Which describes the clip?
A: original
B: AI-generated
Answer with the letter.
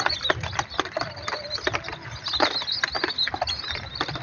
A